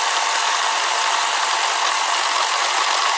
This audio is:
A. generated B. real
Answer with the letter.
B